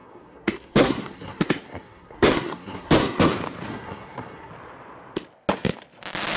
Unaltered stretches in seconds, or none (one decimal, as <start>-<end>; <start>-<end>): 3.3-3.7; 4.5-6.4